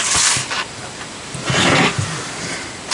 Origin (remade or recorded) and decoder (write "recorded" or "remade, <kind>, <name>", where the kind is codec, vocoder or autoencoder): recorded